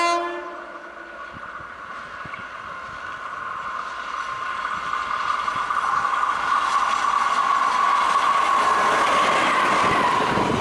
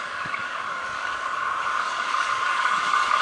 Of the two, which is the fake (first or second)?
second